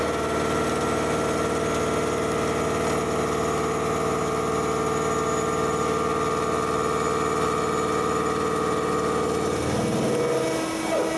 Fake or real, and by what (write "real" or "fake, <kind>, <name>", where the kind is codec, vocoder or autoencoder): real